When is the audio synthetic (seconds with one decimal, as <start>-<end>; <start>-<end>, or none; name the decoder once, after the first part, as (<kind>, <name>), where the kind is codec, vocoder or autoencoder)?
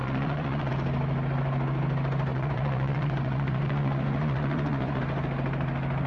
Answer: 0.0-0.7 (vocoder, Vocos); 2.3-5.0